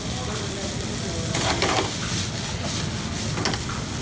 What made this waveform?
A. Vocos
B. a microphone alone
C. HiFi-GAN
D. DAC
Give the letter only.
B